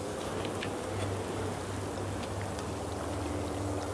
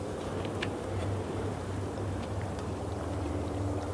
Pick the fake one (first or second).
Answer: second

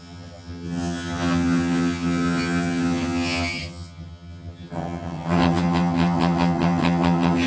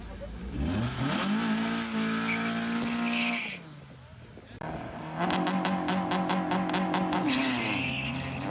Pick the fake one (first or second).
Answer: first